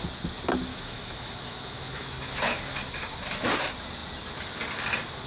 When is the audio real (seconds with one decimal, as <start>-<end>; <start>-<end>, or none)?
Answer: 0.0-0.7; 2.6-5.3